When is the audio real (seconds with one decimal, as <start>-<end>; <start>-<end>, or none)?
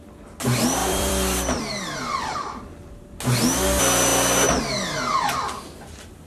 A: 0.0-0.8; 1.6-6.3